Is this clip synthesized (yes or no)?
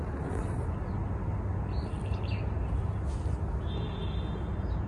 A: no